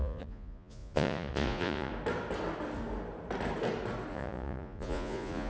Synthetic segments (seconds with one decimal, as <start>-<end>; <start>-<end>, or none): 0.0-1.9; 4.1-5.5